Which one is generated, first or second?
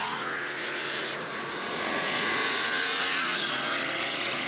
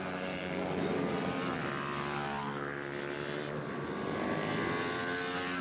first